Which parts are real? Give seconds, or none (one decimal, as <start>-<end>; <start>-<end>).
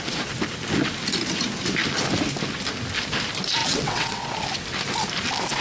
0.0-3.6; 4.3-5.6